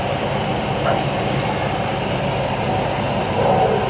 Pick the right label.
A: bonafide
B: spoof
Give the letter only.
B